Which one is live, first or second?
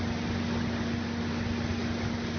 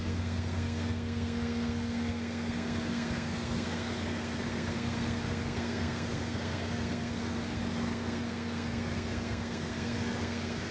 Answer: first